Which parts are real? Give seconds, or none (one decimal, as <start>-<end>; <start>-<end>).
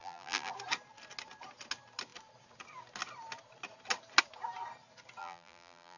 0.5-5.2